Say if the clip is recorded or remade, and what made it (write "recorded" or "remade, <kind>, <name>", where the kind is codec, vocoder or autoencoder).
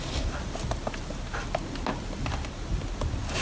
recorded